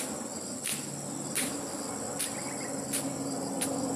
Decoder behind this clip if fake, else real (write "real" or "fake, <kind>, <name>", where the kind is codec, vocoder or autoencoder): real